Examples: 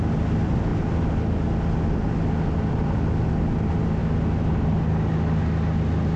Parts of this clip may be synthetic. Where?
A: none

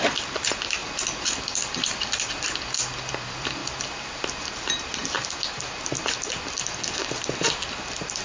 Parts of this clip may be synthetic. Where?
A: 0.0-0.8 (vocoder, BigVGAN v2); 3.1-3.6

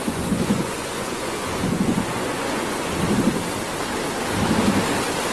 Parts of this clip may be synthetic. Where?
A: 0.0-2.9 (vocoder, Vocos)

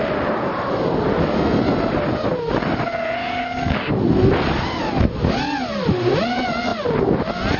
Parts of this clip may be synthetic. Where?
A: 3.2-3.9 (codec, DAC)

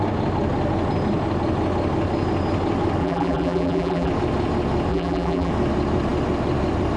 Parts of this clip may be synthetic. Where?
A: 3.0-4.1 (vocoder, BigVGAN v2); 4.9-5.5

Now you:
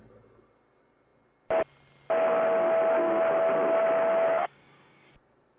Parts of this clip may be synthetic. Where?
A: 4.4-5.1 (codec, DAC)

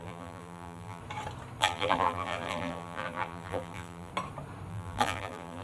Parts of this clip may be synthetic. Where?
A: 0.0-1.0 (vocoder, BigVGAN v2); 1.6-4.1; 4.7-5.6